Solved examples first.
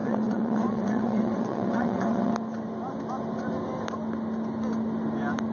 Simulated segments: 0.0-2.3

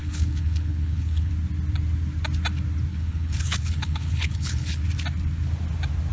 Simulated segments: 0.0-1.3; 2.9-4.8

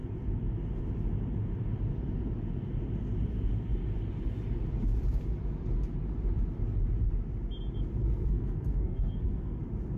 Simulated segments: 8.0-9.6

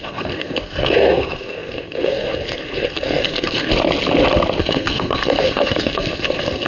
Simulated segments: 0.0-3.7; 4.6-6.7

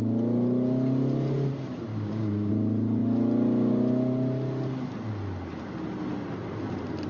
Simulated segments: 1.9-2.5

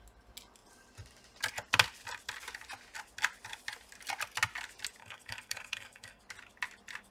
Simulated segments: 5.0-6.2

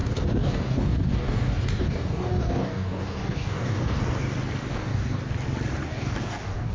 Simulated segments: 0.0-4.0; 4.7-5.2; 5.8-6.7

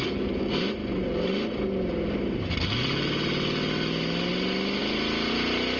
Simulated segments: none